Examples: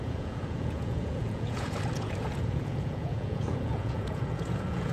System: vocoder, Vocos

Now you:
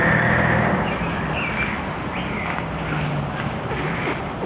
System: none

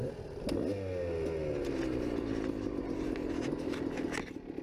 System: none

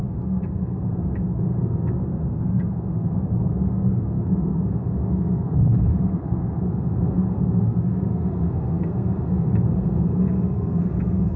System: codec, SNAC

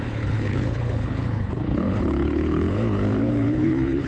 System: codec, HILCodec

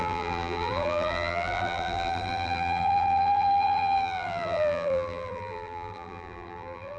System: vocoder, BigVGAN v2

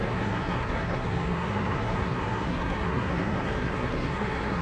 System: codec, SNAC